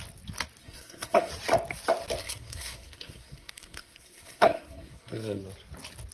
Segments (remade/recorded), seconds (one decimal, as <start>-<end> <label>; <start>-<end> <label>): 0.0-0.6 recorded; 0.6-1.3 remade; 1.3-2.2 recorded; 2.2-5.4 remade; 5.4-6.1 recorded